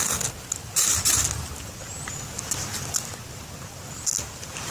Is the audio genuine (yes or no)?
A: yes